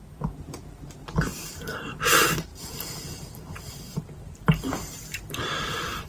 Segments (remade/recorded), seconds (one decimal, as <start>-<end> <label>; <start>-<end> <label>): 0.0-1.3 recorded; 1.3-2.0 remade; 2.0-2.5 recorded; 2.5-3.2 remade; 3.2-3.9 recorded; 3.9-6.1 remade